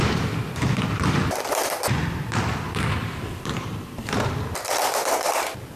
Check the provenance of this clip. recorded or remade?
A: remade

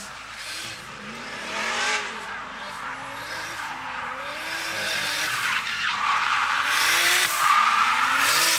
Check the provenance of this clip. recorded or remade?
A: remade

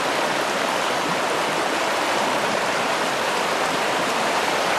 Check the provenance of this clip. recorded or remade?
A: remade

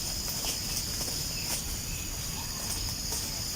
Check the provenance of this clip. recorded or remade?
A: recorded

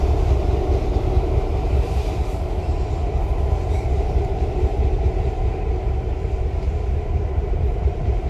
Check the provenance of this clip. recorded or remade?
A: remade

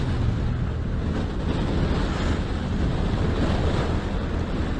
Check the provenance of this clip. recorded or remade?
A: recorded